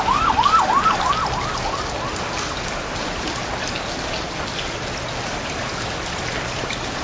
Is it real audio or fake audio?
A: real